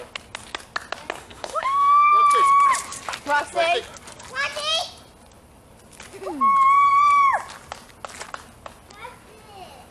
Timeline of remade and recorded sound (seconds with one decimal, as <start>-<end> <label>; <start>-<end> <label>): 0.0-1.2 recorded; 1.2-2.1 remade; 2.1-9.9 recorded